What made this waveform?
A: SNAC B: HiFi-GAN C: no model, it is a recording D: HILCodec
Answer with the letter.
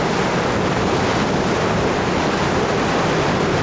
C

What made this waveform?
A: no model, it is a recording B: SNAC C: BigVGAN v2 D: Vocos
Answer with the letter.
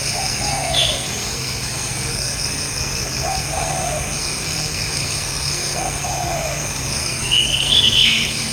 B